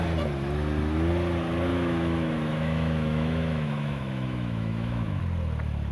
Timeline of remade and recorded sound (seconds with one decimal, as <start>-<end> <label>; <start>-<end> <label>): 0.0-1.7 recorded; 1.7-5.2 remade; 5.2-5.9 recorded

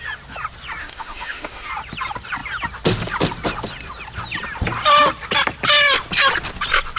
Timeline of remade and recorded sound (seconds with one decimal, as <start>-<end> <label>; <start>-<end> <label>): 0.0-0.8 recorded; 0.8-1.7 remade; 1.7-7.0 recorded

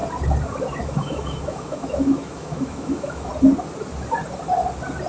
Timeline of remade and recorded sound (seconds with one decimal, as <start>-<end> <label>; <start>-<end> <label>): 0.0-0.8 recorded; 0.8-3.3 remade; 3.3-5.1 recorded

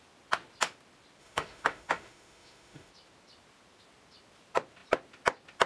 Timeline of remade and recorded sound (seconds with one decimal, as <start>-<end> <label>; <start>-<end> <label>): 0.0-1.2 recorded; 1.2-2.9 remade; 2.9-5.7 recorded

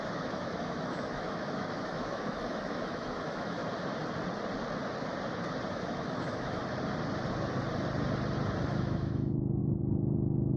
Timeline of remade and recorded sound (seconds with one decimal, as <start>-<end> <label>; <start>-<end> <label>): 0.0-3.6 remade; 3.6-5.7 recorded; 5.7-6.6 remade; 6.6-8.7 recorded; 8.7-9.6 remade; 9.6-10.6 recorded

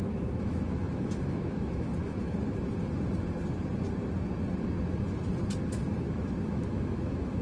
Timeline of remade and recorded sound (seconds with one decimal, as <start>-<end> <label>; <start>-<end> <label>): 0.0-1.9 remade; 1.9-6.0 recorded; 6.0-7.4 remade